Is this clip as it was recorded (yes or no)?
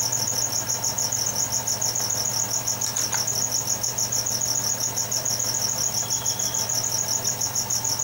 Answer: yes